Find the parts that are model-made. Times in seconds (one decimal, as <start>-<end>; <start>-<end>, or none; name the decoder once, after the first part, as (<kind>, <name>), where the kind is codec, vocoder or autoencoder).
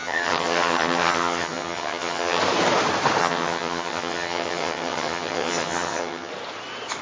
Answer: 0.0-2.4 (vocoder, HiFi-GAN); 3.2-6.3